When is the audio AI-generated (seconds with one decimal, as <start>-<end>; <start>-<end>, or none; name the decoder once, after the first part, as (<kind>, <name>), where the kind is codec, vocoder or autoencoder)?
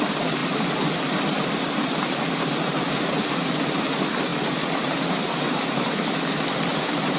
none